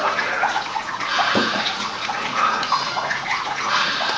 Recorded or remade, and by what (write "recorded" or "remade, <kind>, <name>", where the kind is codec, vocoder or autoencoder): remade, vocoder, Vocos